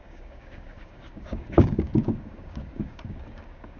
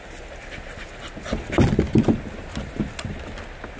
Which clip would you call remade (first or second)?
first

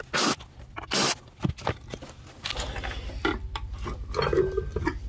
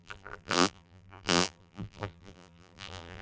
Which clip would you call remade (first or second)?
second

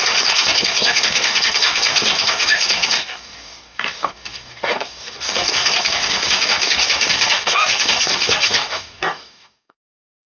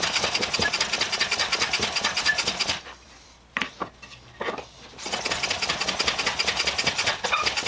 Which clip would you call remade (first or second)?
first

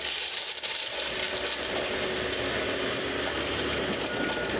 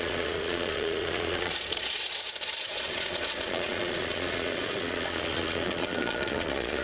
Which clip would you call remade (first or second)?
second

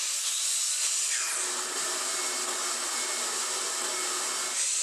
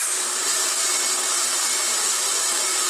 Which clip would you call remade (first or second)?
second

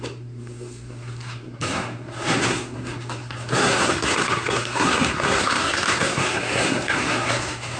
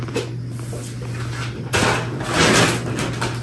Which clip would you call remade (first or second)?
first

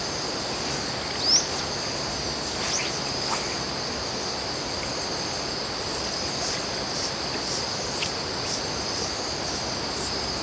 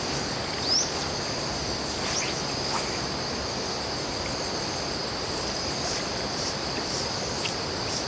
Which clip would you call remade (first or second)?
second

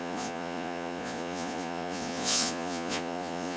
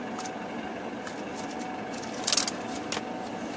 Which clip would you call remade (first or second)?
first